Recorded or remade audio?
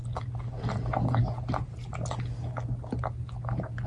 recorded